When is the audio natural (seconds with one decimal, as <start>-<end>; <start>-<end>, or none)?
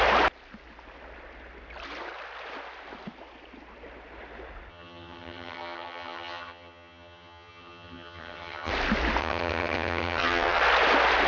0.0-4.7; 8.7-9.2; 10.6-11.3